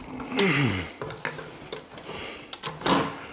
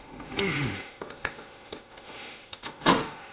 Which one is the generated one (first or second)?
second